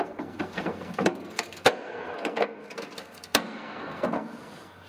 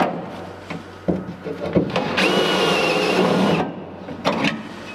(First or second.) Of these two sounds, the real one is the second